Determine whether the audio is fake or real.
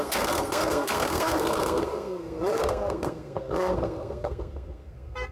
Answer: fake